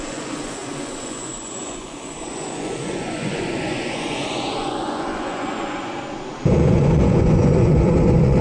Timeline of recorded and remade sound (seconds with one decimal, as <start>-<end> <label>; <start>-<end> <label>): 0.0-5.9 remade; 5.9-6.5 recorded; 6.5-8.4 remade